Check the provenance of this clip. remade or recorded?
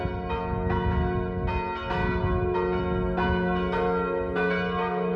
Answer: recorded